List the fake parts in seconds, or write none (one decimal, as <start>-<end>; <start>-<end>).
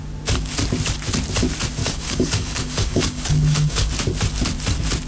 1.8-3.9